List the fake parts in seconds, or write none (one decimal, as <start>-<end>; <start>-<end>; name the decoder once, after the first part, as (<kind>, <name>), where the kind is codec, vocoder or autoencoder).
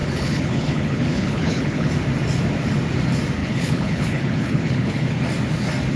0.0-1.9 (codec, HILCodec); 3.4-5.2